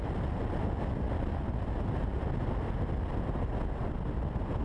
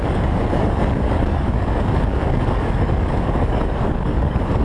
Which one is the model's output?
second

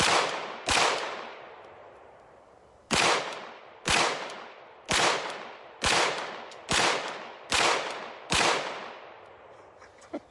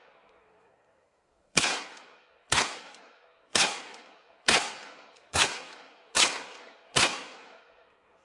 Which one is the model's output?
second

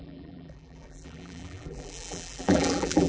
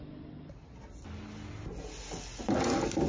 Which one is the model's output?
first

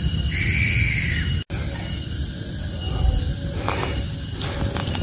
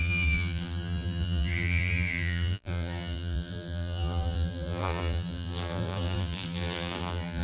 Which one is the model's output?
second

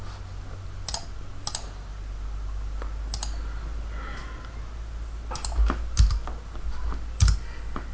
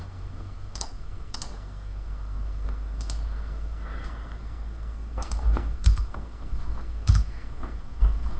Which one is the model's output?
second